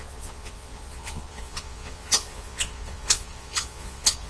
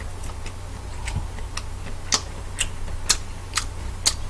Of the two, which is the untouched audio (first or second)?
second